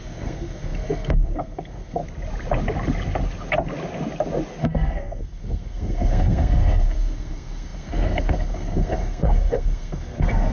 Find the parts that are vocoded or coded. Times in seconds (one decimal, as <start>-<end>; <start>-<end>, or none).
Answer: 0.0-2.0; 4.6-10.5